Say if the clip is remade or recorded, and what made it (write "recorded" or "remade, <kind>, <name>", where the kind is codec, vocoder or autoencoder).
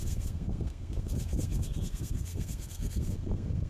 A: remade, codec, SNAC